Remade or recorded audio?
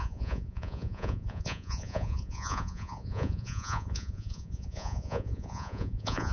remade